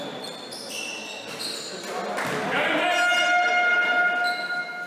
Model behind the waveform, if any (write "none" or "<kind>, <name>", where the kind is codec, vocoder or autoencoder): none